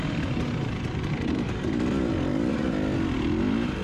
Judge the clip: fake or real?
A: real